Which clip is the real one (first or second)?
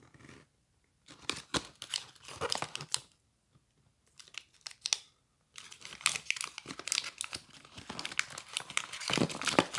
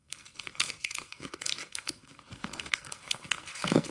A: first